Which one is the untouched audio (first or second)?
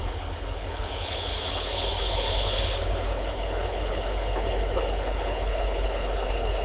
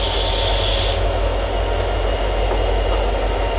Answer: second